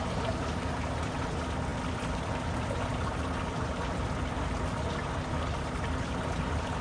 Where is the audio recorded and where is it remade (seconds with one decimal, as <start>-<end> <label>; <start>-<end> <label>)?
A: 0.0-6.8 recorded